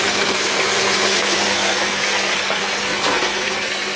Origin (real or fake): fake